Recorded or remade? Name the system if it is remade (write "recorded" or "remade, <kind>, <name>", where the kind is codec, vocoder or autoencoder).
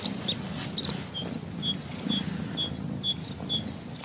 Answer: recorded